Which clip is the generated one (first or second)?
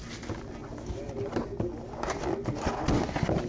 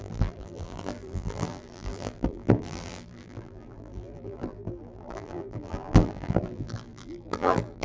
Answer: second